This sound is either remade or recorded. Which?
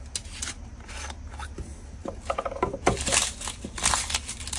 recorded